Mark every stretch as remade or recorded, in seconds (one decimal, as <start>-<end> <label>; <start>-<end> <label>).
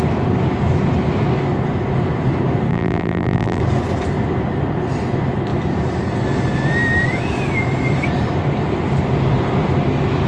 0.0-2.7 recorded; 2.7-3.6 remade; 3.6-10.3 recorded